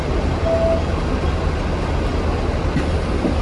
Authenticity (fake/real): real